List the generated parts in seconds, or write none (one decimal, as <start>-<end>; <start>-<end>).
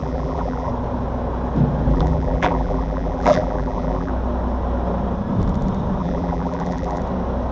0.0-0.7; 1.9-4.1; 6.0-7.0